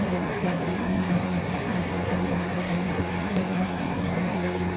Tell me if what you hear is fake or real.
fake